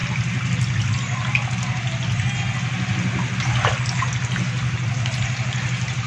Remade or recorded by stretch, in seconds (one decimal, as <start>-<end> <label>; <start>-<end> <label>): 0.0-6.1 recorded